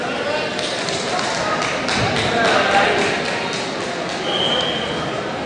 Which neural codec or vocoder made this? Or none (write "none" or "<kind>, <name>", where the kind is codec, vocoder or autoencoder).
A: none